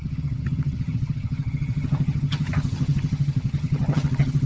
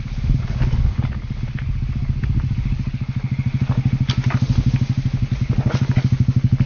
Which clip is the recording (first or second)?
second